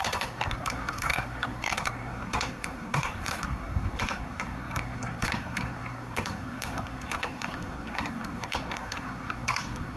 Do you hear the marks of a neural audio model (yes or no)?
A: yes